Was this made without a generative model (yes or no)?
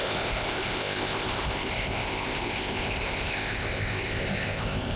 no